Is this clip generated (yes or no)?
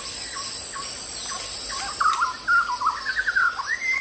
no